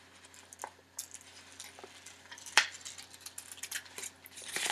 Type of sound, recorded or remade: recorded